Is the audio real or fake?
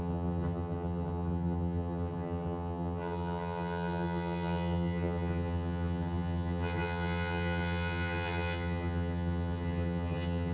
fake